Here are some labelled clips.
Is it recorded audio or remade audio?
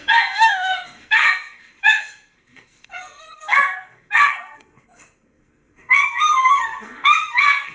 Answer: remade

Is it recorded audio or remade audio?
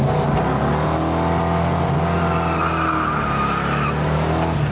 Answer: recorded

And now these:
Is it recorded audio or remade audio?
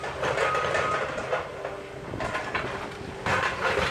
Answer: recorded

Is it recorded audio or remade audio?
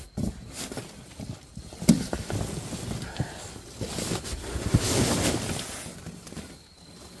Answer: recorded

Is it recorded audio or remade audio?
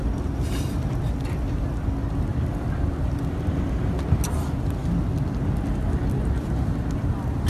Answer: recorded